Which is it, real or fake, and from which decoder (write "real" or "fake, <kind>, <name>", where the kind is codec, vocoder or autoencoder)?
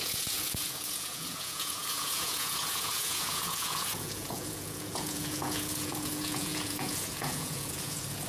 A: fake, vocoder, Vocos